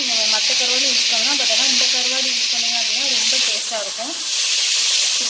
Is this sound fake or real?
real